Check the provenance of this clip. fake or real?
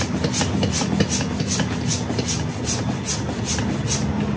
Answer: real